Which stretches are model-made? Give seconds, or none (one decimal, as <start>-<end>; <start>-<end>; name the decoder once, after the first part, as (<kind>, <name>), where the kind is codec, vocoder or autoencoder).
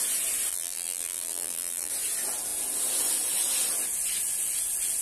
0.5-1.9 (vocoder, BigVGAN v2)